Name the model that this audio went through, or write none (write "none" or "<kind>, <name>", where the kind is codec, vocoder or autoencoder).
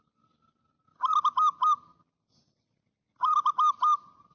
none